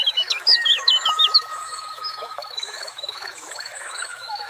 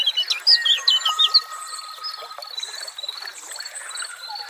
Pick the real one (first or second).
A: second